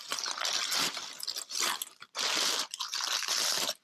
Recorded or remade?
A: remade